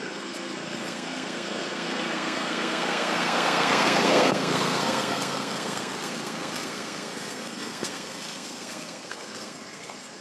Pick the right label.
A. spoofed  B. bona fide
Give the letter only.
A